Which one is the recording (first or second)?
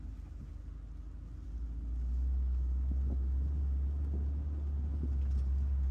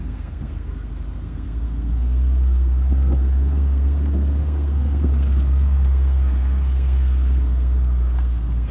first